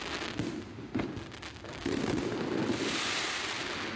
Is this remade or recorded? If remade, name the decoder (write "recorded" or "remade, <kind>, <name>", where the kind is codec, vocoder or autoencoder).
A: recorded